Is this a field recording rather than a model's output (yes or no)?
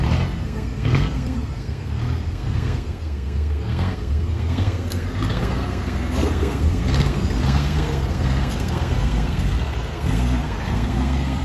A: no